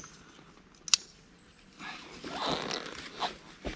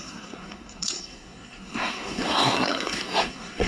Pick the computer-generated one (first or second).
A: second